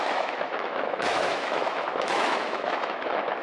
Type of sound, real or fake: fake